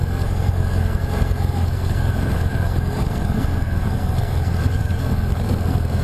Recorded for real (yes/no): no